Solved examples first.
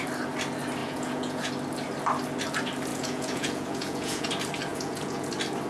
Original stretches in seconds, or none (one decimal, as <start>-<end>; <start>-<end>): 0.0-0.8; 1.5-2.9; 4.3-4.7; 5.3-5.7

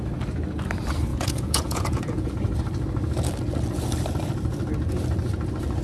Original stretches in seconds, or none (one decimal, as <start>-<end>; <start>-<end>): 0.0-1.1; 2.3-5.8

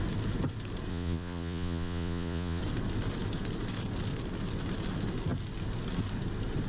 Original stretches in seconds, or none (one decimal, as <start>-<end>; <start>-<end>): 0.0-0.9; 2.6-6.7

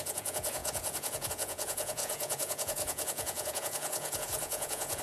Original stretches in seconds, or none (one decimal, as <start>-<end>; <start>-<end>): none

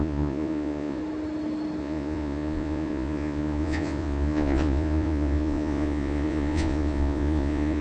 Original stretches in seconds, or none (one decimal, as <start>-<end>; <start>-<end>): 1.0-1.8

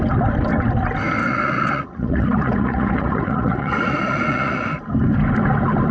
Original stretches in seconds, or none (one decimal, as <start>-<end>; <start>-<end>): 0.0-1.2; 4.7-5.9